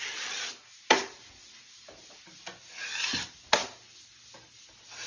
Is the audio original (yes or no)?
yes